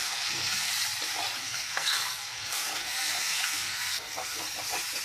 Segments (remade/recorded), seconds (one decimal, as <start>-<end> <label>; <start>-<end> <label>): 0.0-0.7 remade; 0.7-1.4 recorded; 1.4-4.4 remade; 4.4-5.0 recorded